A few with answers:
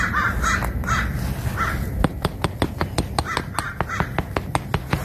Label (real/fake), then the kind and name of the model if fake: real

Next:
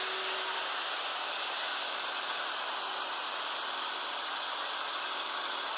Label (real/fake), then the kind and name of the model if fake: real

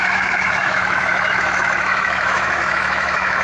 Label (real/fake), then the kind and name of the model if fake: fake, autoencoder, DAC-VAE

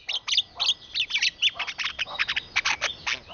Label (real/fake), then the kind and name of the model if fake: real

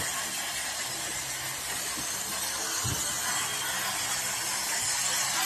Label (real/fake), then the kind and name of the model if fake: real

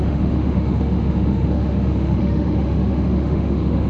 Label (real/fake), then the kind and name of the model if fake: fake, autoencoder, DAC-VAE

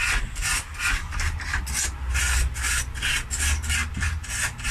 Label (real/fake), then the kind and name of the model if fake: real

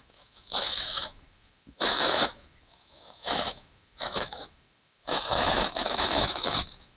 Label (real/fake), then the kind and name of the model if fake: fake, autoencoder, DAC-VAE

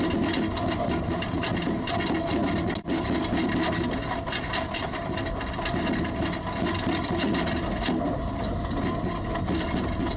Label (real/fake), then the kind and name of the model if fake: real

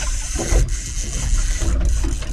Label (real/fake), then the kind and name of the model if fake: real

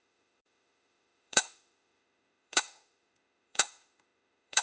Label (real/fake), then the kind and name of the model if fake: fake, autoencoder, DAC-VAE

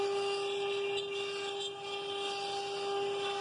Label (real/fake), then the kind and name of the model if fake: real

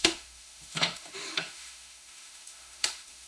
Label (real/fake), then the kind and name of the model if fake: fake, autoencoder, DAC-VAE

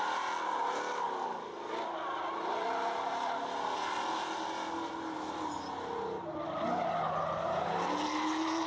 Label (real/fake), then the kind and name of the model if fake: real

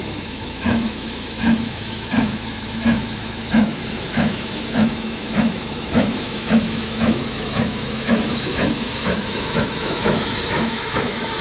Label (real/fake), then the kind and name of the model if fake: fake, autoencoder, DAC-VAE